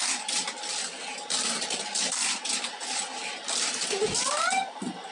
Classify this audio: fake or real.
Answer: real